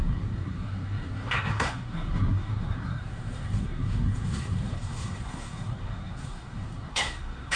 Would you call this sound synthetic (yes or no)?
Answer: yes